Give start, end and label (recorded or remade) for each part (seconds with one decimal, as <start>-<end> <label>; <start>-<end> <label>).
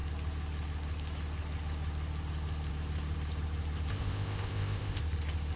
0.0-3.9 recorded; 3.9-5.0 remade; 5.0-5.6 recorded